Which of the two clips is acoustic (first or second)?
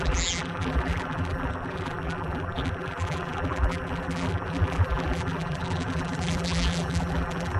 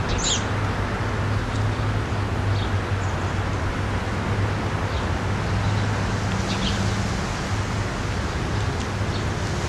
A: second